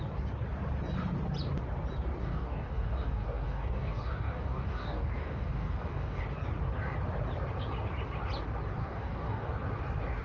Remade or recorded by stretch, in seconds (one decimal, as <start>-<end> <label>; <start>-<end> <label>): 0.0-2.2 recorded; 2.2-6.2 remade; 6.2-8.8 recorded; 8.8-9.5 remade; 9.5-10.2 recorded